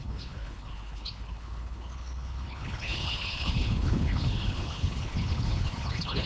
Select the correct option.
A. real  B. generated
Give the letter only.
B